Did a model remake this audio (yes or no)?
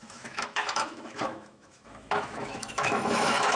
yes